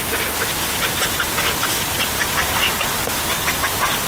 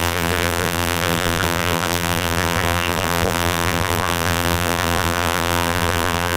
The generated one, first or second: second